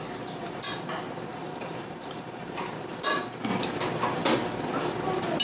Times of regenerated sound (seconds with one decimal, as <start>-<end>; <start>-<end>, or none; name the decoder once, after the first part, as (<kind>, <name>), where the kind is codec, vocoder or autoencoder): 1.3-2.9 (vocoder, BigVGAN v2)